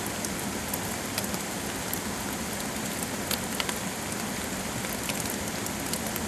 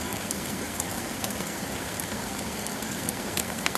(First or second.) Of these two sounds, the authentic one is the first